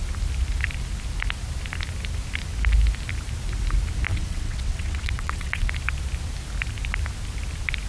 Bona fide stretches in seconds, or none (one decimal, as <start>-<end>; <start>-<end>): 0.0-4.1; 5.7-7.9